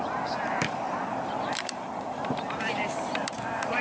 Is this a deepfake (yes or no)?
yes